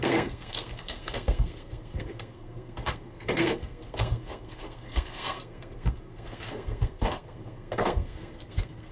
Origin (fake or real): fake